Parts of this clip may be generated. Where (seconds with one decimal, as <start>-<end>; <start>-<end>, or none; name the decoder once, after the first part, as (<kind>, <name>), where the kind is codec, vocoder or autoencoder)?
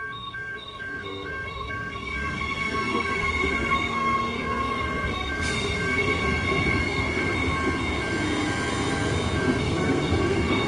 0.0-6.2 (codec, SNAC); 6.8-7.2; 9.6-10.7